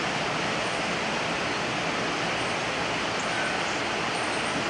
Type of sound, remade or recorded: recorded